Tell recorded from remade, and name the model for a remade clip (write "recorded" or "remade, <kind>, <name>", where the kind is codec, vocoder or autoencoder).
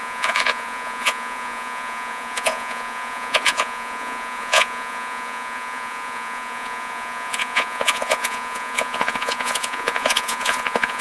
remade, vocoder, Vocos